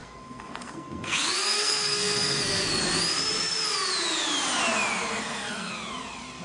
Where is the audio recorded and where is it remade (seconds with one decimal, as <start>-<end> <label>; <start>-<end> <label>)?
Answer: 0.0-2.8 remade; 2.8-5.1 recorded; 5.1-5.7 remade; 5.7-6.4 recorded